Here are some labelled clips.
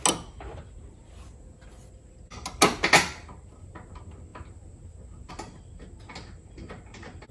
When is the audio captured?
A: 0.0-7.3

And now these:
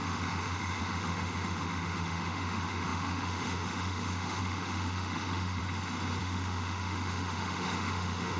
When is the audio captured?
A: 5.6-6.2

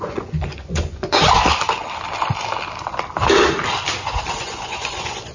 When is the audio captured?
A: 1.2-4.4

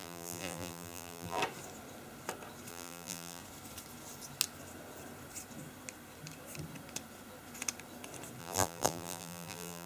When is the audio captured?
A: 1.4-2.7; 3.4-8.4

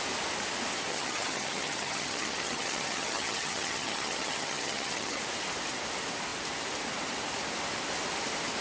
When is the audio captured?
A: 0.0-0.9; 5.2-8.6

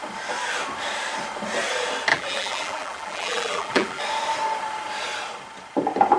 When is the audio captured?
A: 0.0-2.1; 4.0-6.2